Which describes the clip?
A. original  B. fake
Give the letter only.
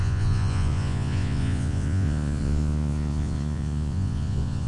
B